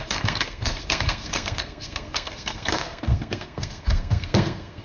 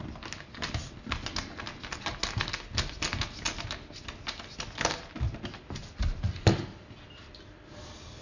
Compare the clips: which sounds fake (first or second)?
first